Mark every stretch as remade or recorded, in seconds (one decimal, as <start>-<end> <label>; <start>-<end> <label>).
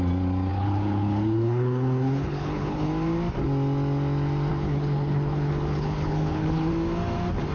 0.0-0.5 recorded; 0.5-2.9 remade; 2.9-4.5 recorded; 4.5-6.7 remade; 6.7-7.5 recorded